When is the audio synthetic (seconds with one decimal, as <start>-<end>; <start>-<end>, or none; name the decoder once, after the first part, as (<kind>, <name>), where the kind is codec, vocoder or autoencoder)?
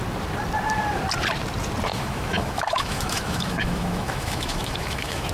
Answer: 1.9-5.3 (autoencoder, DAC-VAE)